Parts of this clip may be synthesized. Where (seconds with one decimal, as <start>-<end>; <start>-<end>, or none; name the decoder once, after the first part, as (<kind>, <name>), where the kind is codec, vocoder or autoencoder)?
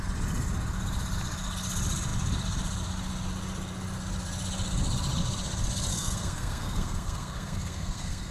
5.9-8.3 (codec, SNAC)